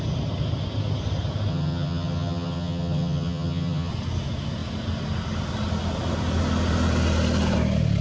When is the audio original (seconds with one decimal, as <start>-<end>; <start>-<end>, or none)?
0.0-1.5; 3.9-8.0